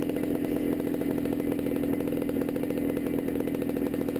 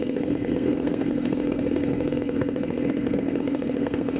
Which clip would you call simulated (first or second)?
second